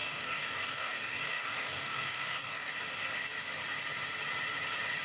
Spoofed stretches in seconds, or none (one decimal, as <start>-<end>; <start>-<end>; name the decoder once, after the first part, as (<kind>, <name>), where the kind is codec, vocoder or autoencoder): 0.0-2.7 (codec, DAC)